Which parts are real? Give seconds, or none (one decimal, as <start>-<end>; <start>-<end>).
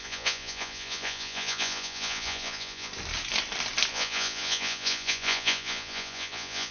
2.9-3.9